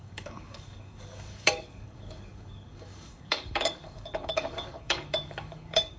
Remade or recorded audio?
remade